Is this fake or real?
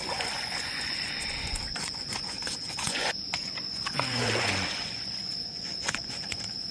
fake